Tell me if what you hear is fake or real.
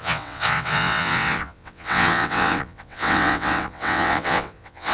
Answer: fake